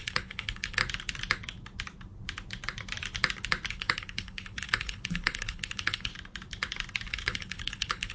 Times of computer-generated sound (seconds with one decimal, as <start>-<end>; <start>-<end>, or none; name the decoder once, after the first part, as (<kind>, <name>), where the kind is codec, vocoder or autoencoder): 0.0-0.8 (codec, HILCodec); 3.7-6.1; 7.1-8.1